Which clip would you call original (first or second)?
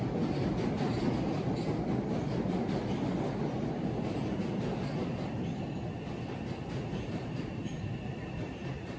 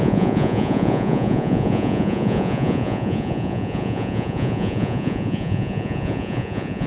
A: first